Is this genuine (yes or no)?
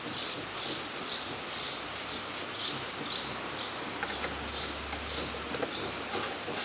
yes